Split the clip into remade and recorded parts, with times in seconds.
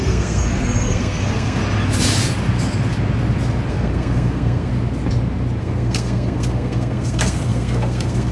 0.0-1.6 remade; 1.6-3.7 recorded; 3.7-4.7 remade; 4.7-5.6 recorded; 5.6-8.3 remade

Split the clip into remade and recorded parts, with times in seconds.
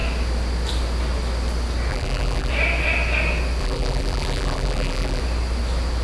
0.0-1.9 recorded; 1.9-2.5 remade; 2.5-3.6 recorded; 3.6-5.2 remade; 5.2-6.0 recorded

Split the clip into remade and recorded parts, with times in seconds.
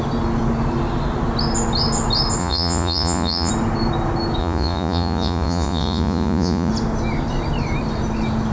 0.0-2.4 recorded; 2.4-3.5 remade; 3.5-4.4 recorded; 4.4-6.7 remade; 6.7-8.5 recorded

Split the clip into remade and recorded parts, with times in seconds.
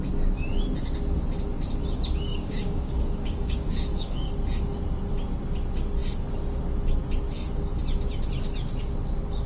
0.0-2.3 recorded; 2.3-4.3 remade; 4.3-9.5 recorded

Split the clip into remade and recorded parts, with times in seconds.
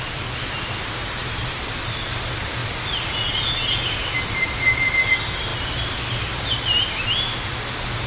0.0-8.1 recorded